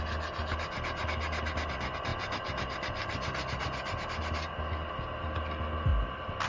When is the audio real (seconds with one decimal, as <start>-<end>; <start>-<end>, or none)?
0.0-6.5